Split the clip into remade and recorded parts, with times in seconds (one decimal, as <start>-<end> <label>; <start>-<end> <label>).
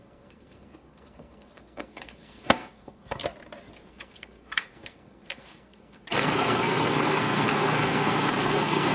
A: 0.0-3.2 remade; 3.2-3.9 recorded; 3.9-8.9 remade